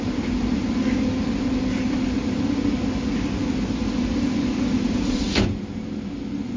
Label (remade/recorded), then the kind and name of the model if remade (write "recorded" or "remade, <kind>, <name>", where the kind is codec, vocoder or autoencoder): recorded